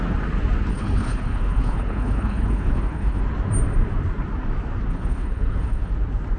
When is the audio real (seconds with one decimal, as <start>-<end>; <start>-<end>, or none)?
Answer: 0.0-0.7; 3.2-4.9; 5.9-6.4